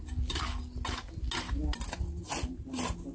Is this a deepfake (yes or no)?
no